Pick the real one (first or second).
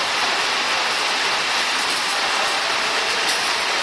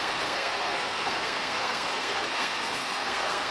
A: first